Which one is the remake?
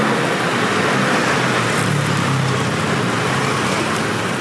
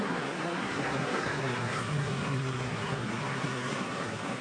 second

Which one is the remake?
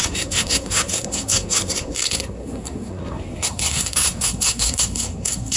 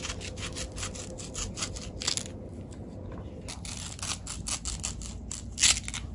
first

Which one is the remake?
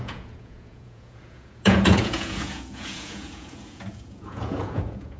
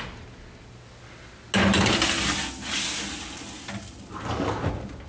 first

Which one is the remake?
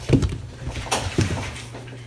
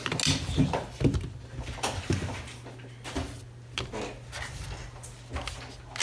first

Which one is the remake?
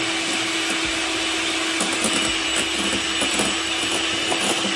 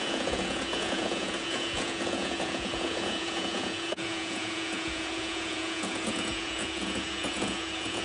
second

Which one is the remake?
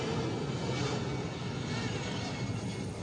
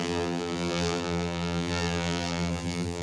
second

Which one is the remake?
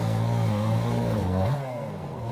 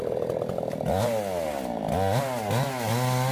first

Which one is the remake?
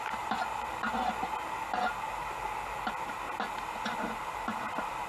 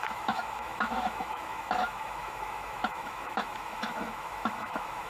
second